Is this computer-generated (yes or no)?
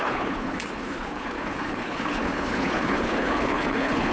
yes